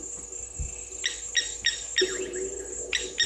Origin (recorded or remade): recorded